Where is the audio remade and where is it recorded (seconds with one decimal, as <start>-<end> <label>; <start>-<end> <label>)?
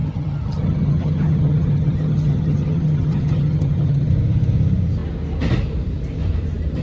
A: 0.0-4.1 remade; 4.1-6.8 recorded